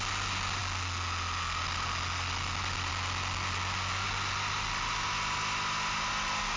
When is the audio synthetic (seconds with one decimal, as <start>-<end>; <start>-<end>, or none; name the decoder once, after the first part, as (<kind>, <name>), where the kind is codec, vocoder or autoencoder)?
none